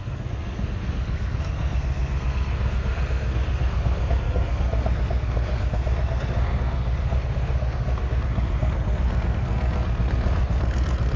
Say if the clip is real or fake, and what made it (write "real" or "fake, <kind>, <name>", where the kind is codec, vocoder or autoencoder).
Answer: fake, codec, SNAC